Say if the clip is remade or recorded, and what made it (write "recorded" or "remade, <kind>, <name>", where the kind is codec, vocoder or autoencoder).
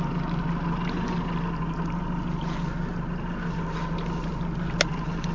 recorded